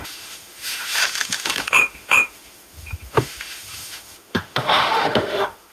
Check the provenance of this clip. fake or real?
fake